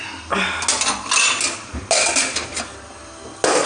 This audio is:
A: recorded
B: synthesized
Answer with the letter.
A